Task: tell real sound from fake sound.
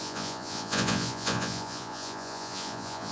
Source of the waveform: fake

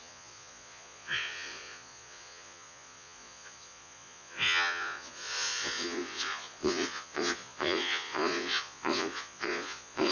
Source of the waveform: fake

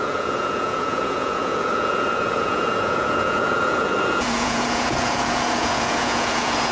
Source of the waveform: fake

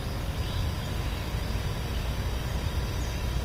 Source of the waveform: real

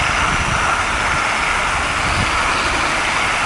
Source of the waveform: real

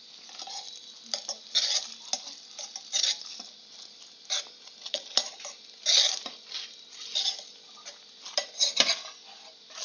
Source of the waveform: real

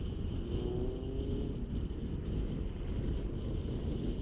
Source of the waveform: real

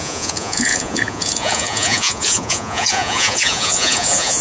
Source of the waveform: fake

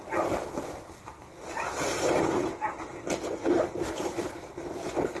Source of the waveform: real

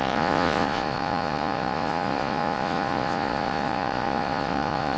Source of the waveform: fake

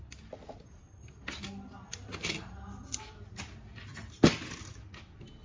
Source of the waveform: real